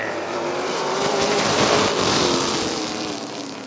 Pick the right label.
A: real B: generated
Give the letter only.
B